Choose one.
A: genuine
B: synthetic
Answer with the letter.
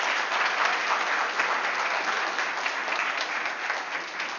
A